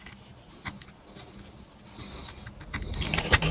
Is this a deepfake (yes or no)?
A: no